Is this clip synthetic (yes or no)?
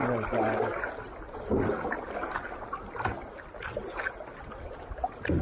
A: no